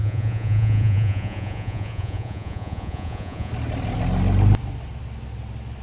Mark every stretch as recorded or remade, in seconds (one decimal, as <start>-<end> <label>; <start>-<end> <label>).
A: 0.0-3.5 remade; 3.5-5.8 recorded